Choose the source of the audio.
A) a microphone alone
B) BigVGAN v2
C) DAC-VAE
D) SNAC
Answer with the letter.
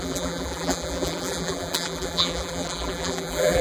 B